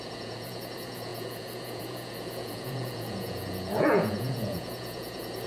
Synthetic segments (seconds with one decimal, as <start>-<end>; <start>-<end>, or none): 0.0-5.5